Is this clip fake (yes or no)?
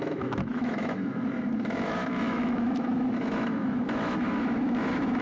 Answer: yes